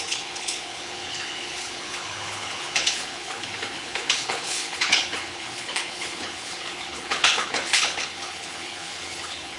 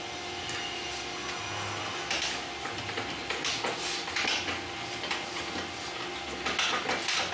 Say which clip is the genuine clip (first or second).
second